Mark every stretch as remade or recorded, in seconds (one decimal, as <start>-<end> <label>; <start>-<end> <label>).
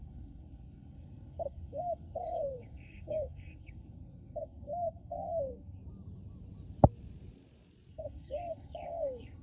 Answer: 0.0-5.8 remade; 5.8-7.9 recorded; 7.9-9.4 remade